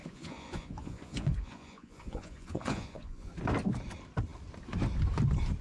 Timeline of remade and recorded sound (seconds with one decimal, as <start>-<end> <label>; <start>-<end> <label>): 0.0-3.3 remade; 3.3-5.6 recorded